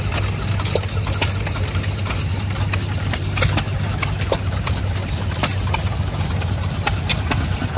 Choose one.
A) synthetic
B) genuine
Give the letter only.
B